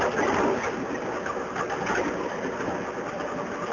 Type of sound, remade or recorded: recorded